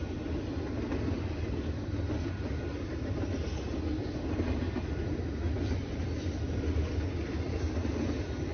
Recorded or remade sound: recorded